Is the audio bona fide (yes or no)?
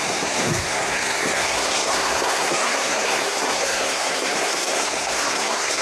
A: no